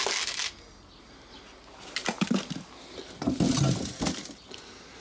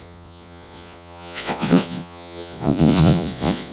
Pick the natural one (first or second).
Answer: first